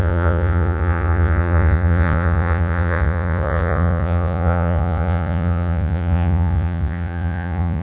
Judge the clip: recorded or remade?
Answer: remade